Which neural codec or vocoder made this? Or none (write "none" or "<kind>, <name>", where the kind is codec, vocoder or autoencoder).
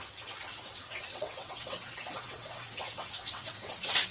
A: vocoder, WaveNeXt